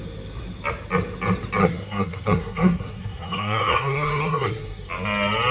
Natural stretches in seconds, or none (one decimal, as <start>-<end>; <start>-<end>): 0.0-1.6; 4.9-5.5